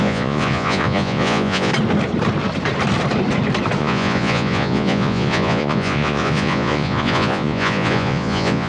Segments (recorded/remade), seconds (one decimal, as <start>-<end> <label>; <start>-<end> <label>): 0.0-1.7 remade; 1.7-3.8 recorded; 3.8-8.7 remade